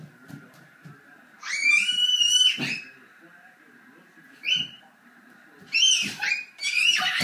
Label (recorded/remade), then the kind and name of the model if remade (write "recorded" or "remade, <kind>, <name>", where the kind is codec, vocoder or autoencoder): remade, vocoder, BigVGAN v2